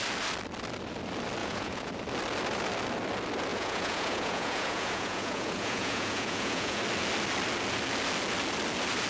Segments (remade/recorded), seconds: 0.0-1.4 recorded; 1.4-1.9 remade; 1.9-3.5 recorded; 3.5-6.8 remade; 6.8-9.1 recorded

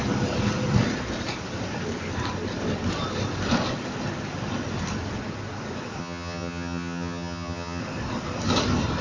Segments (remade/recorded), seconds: 0.0-6.0 recorded; 6.0-7.8 remade; 7.8-9.0 recorded

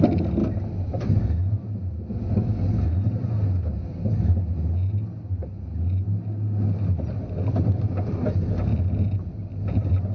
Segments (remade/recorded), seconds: 0.0-10.1 recorded

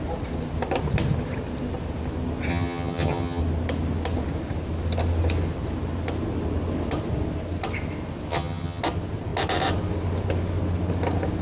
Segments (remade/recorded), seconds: 0.0-2.5 recorded; 2.5-3.4 remade; 3.4-8.3 recorded; 8.3-8.8 remade; 8.8-11.4 recorded

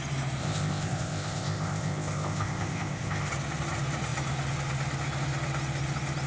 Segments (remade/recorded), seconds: 0.0-0.4 recorded; 0.4-3.3 remade; 3.3-6.3 recorded

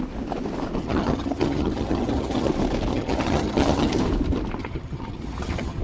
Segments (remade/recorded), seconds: 0.0-0.8 recorded; 0.8-2.5 remade; 2.5-2.9 recorded; 2.9-4.0 remade; 4.0-4.6 recorded; 4.6-5.8 remade

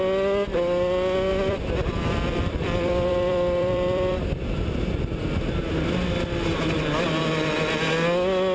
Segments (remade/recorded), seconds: 0.0-1.3 recorded; 1.3-4.2 remade; 4.2-8.5 recorded